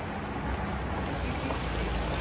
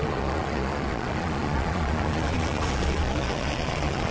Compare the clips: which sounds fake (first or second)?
second